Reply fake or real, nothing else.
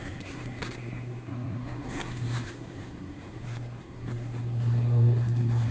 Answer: fake